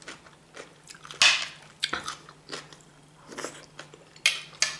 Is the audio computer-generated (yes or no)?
no